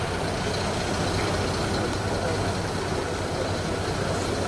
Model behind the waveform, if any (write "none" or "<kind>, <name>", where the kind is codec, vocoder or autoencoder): none